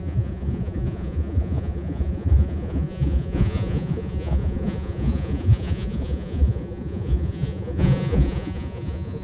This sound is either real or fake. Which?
fake